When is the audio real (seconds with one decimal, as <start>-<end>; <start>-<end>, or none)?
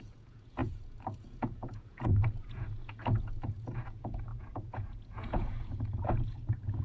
none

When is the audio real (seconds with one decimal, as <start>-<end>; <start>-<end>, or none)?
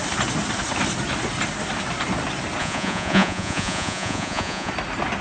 0.0-2.6; 4.7-5.2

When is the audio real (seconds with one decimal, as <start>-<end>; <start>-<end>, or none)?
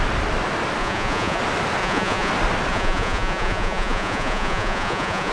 0.0-0.8; 1.4-1.8; 2.3-2.7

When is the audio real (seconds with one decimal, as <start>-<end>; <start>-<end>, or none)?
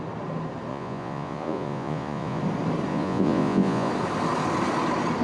0.0-0.7; 2.4-2.9; 3.9-5.2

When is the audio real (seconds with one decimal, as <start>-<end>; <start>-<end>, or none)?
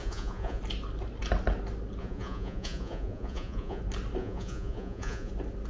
0.6-2.0; 3.8-4.2; 5.3-5.7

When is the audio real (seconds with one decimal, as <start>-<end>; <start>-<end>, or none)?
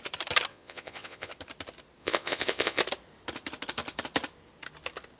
0.0-0.5; 1.3-2.0; 2.8-5.2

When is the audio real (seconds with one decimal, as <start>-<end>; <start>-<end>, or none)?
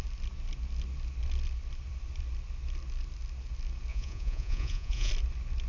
0.0-3.9; 5.1-5.7